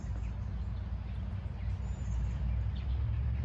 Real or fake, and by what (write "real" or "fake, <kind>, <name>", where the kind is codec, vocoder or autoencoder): real